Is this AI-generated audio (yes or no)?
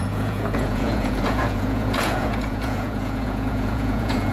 yes